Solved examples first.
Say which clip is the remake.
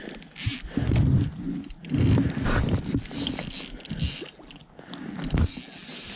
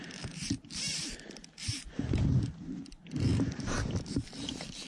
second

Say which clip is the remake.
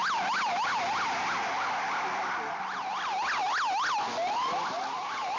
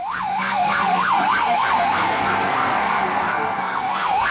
second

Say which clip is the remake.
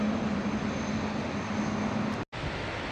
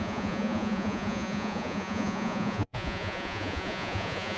second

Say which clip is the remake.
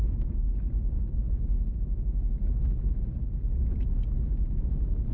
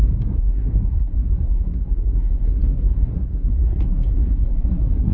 second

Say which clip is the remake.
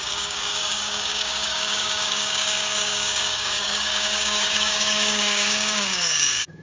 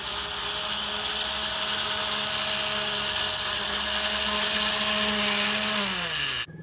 first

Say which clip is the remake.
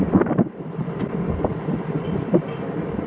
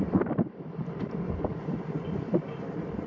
second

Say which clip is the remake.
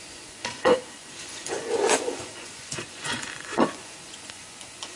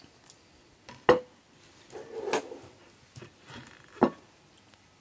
first